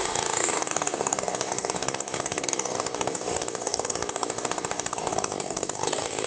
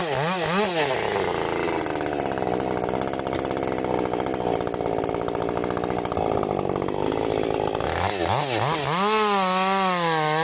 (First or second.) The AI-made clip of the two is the first